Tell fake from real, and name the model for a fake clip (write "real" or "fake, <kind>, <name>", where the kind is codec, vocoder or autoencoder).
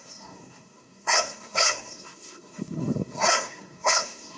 fake, codec, SNAC